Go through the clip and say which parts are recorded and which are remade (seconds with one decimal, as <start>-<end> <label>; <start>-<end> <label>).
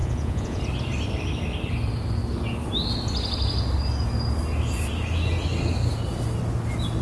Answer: 0.0-0.6 remade; 0.6-7.0 recorded